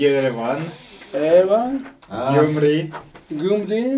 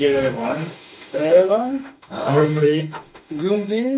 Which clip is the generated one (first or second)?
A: second